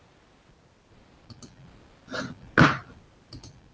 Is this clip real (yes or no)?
yes